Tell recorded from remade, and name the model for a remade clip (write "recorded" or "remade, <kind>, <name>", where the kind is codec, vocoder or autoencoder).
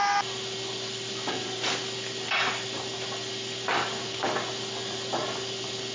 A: recorded